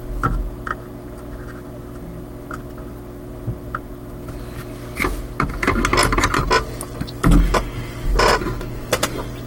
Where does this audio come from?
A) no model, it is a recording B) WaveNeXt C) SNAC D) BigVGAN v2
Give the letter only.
A